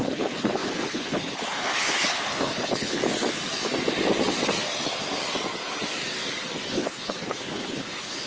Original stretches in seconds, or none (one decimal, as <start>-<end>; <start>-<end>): 3.0-6.7